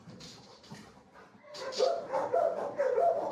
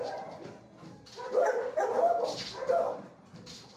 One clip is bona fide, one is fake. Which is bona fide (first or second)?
second